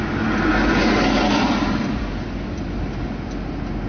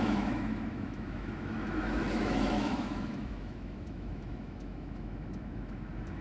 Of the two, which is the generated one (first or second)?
second